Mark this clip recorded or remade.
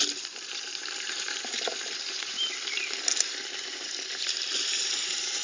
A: remade